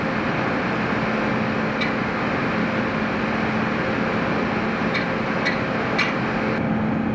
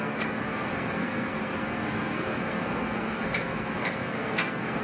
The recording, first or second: first